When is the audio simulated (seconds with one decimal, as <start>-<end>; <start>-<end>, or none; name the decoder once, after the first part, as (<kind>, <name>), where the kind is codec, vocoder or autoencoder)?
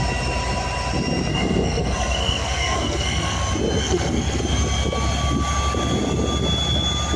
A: 1.3-3.4 (codec, SNAC); 3.8-4.4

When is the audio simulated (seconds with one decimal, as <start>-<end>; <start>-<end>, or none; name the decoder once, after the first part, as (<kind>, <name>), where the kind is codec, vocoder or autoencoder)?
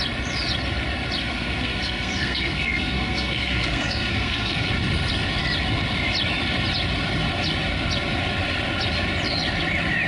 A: 1.2-4.7 (codec, SNAC)